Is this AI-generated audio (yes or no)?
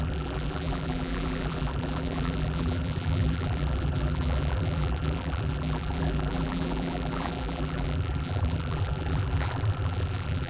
yes